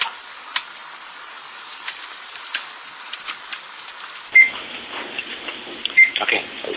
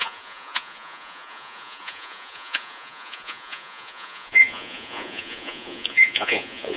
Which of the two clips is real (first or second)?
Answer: first